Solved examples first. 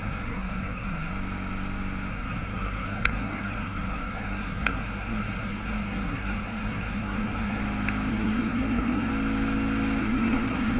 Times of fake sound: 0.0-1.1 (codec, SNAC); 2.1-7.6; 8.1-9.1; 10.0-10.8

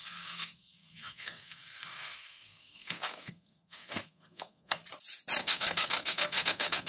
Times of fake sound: 0.0-4.8 (codec, SNAC); 5.4-6.9

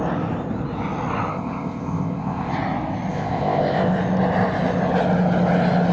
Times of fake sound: 1.3-2.5 (codec, ZipCodec); 3.1-4.0

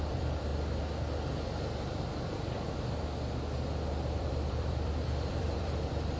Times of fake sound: 0.0-0.5 (vocoder, BigVGAN v2); 4.2-6.2

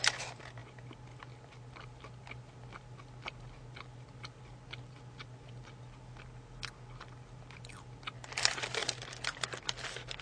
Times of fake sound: none

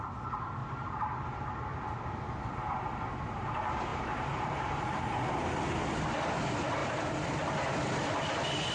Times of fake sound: 0.6-1.2 (vocoder, BigVGAN v2); 3.9-5.3; 6.8-7.5

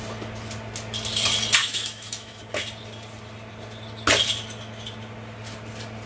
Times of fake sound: 1.6-2.4 (autoencoder, DAC-VAE)